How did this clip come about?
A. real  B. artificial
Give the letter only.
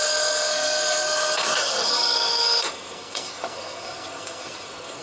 B